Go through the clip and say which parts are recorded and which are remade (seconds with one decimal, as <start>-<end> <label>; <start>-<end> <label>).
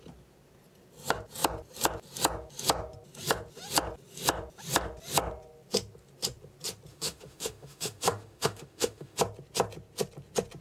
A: 0.0-6.9 recorded; 6.9-9.2 remade; 9.2-10.6 recorded